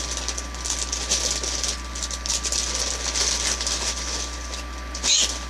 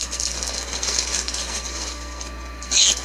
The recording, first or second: first